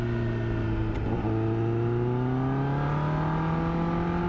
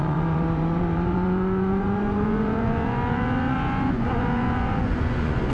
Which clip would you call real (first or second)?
first